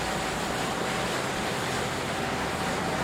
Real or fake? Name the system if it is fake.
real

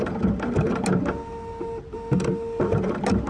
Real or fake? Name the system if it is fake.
real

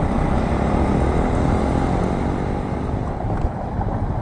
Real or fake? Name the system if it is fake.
real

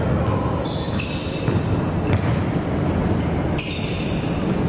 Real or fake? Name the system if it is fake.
real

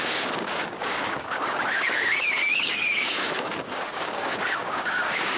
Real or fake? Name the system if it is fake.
fake, codec, DAC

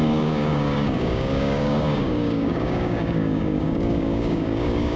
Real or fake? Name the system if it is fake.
fake, codec, DAC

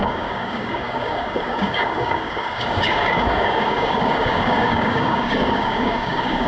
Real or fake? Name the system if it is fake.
fake, codec, DAC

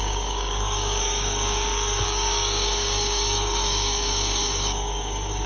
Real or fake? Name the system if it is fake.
fake, codec, DAC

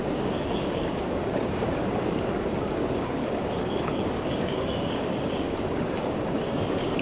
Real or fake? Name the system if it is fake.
fake, codec, DAC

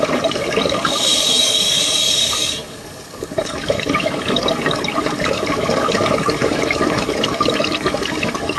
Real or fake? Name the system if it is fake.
fake, codec, DAC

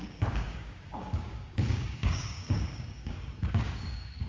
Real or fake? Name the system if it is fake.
fake, codec, DAC